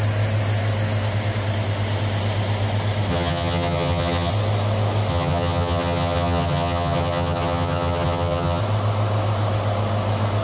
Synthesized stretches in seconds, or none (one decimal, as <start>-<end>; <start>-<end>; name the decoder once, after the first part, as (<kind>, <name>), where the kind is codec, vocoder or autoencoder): 3.1-4.3 (vocoder, HiFi-GAN); 5.1-8.6